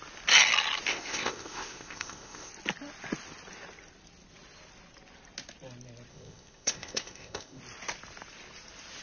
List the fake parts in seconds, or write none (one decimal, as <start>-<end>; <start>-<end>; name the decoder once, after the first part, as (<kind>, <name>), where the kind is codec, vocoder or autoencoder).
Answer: 0.9-2.5 (codec, ZipCodec); 6.1-7.6